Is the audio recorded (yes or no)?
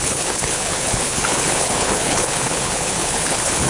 no